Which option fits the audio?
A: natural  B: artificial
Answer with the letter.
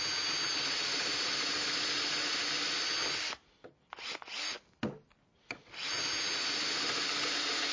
A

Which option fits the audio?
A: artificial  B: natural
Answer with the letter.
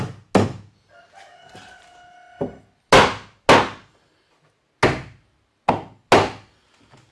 B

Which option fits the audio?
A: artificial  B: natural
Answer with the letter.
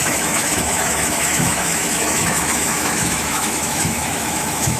A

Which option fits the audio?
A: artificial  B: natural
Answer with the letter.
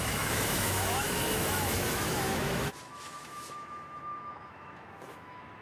A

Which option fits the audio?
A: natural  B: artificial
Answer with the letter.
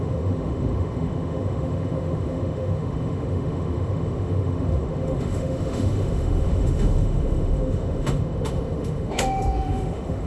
B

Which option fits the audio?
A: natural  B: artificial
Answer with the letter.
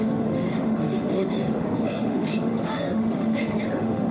B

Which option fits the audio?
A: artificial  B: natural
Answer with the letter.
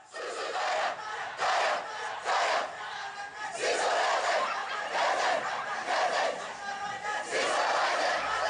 B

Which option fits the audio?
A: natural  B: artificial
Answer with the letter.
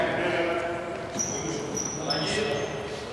A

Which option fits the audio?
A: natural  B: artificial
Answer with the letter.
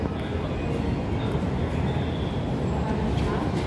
A